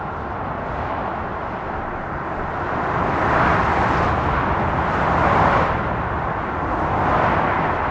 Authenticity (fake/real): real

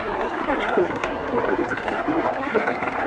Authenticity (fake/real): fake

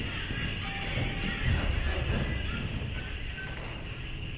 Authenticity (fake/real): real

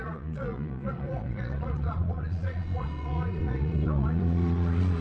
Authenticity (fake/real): fake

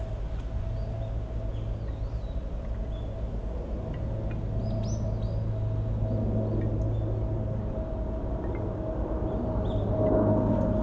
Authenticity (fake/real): real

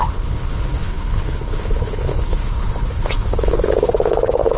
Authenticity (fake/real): fake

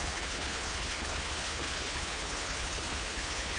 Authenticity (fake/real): fake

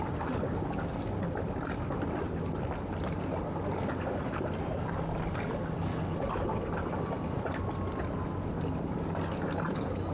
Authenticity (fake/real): real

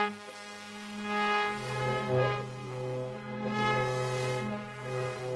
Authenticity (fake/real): fake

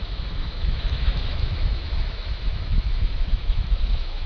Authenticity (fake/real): fake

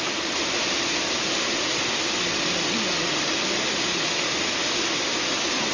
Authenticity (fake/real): real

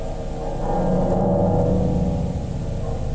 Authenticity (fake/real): real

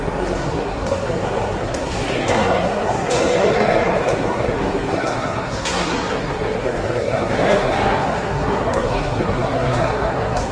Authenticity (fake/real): fake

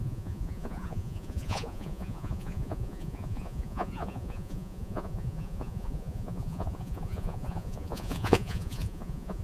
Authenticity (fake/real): fake